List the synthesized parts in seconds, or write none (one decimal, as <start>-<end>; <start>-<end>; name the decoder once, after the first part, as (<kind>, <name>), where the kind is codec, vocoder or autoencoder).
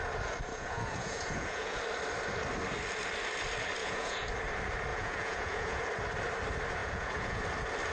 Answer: 0.5-1.8 (vocoder, Vocos); 3.8-4.3; 4.9-5.8; 6.8-7.4